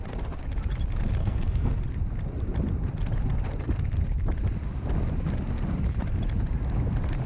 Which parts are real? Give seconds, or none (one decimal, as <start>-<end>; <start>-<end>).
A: 0.0-1.2; 1.8-7.3